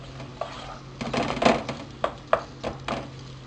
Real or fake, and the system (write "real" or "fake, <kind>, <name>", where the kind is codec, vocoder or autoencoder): real